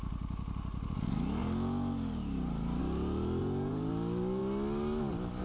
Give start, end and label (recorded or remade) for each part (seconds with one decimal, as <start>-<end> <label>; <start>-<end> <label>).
0.0-3.4 recorded; 3.4-3.9 remade; 3.9-5.4 recorded